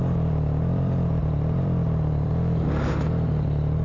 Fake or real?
fake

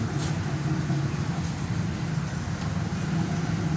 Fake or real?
real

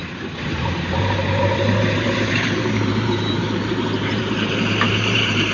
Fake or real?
fake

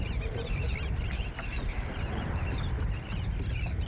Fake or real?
fake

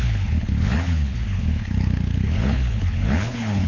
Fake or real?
fake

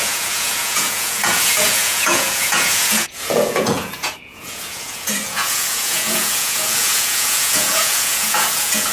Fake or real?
fake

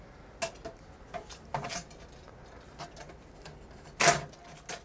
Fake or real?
real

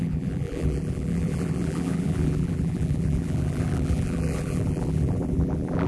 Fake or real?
fake